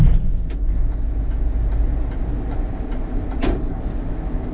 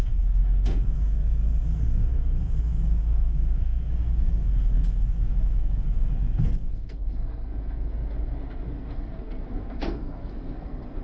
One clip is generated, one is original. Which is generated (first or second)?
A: second